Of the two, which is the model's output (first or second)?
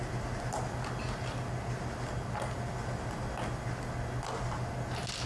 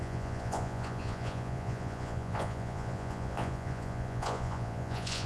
second